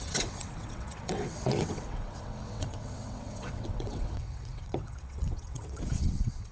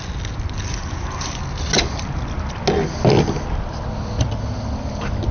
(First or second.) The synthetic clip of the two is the first